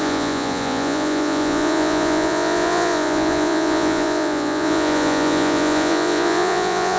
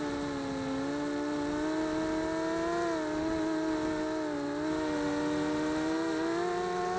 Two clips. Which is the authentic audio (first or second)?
second